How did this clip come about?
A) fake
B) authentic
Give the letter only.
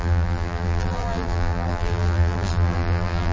A